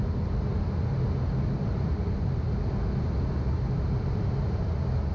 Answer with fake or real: real